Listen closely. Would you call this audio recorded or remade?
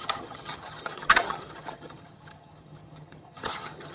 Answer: remade